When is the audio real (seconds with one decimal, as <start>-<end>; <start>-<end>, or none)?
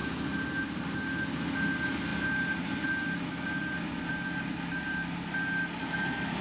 0.0-6.4